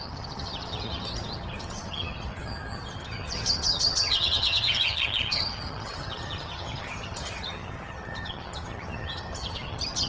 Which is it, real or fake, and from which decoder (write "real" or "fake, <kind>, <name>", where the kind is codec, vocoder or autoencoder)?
fake, vocoder, HiFi-GAN